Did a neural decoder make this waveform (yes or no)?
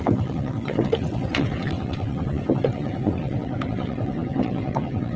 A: yes